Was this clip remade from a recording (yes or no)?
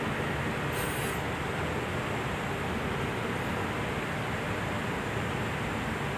no